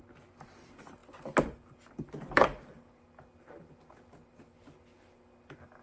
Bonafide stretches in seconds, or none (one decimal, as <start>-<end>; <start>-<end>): 0.0-5.8